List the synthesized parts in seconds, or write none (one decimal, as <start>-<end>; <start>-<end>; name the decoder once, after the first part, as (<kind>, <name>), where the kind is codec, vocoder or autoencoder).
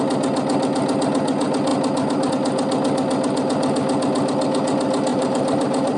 5.1-6.0 (vocoder, BigVGAN v2)